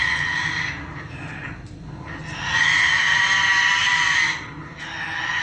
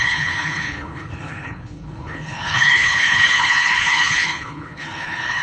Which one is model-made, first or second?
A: second